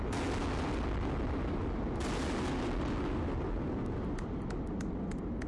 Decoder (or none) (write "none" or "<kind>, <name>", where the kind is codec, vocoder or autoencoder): none